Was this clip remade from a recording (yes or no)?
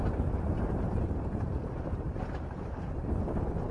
yes